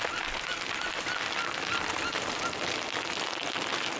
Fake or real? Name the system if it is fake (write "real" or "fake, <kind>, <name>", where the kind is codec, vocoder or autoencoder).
real